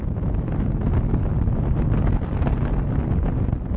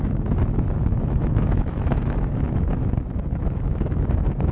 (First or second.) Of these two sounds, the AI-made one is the second